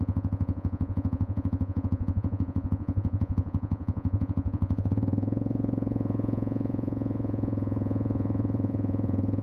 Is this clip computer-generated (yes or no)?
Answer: yes